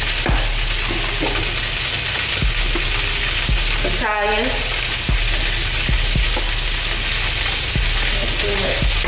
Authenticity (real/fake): real